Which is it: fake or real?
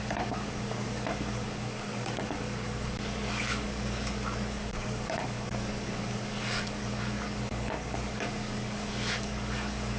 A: fake